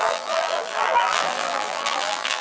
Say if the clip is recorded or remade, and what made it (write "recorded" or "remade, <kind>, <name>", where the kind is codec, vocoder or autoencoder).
remade, vocoder, BigVGAN v2